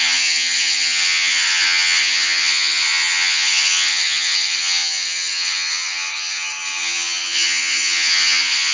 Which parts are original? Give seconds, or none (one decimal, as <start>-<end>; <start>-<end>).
none